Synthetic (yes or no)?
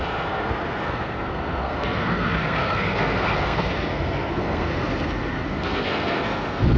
yes